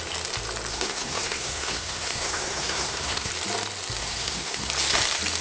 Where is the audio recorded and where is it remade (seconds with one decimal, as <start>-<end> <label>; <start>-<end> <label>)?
0.0-0.7 recorded; 0.7-3.3 remade; 3.3-4.0 recorded; 4.0-4.7 remade; 4.7-5.4 recorded

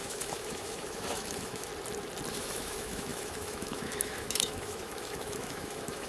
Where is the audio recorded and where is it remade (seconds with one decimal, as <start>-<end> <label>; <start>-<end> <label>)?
0.0-1.7 remade; 1.7-2.3 recorded; 2.3-6.1 remade

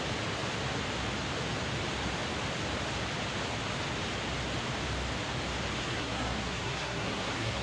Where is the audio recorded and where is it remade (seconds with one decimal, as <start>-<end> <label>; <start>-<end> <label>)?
0.0-5.8 recorded; 5.8-7.6 remade